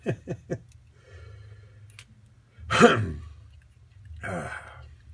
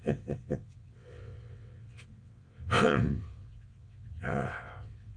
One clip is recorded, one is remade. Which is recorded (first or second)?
first